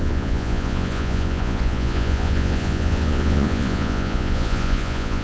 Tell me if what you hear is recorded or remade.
remade